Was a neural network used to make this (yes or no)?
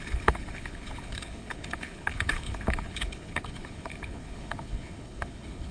yes